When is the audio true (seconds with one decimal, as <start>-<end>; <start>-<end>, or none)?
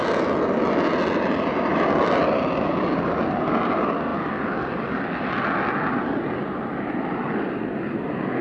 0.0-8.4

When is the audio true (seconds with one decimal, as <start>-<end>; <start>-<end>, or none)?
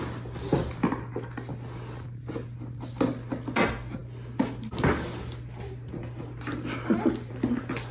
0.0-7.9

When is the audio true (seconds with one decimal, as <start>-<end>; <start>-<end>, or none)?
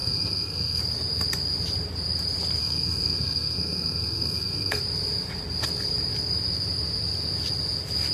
0.8-2.6; 4.8-8.1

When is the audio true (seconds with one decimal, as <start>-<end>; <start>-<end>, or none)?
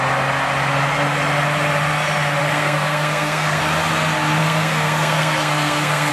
0.0-2.4; 3.6-4.4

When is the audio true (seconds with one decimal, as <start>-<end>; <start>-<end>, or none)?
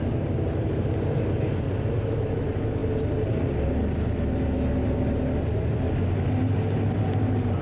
0.0-7.6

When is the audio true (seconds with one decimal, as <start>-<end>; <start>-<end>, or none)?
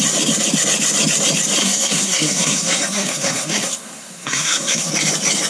0.0-1.6; 4.9-5.5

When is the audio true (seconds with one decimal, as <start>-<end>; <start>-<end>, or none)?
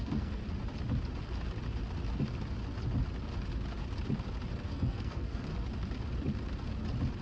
0.4-4.7; 5.5-7.2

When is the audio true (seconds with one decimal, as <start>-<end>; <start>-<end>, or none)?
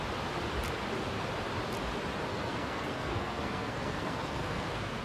0.0-2.3